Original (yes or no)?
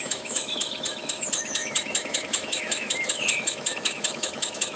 no